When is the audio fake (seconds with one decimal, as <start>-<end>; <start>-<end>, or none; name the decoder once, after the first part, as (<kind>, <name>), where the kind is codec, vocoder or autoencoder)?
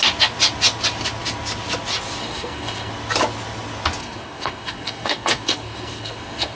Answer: 2.2-2.9 (codec, SNAC); 4.0-6.6